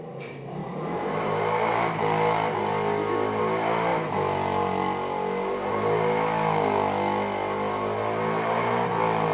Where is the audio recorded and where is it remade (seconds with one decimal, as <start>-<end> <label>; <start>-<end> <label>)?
0.0-9.3 recorded